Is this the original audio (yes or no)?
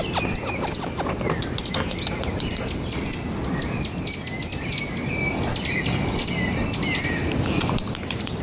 yes